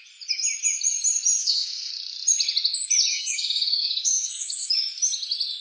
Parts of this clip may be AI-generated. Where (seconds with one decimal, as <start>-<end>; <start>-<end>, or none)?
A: 1.4-1.9; 3.1-4.7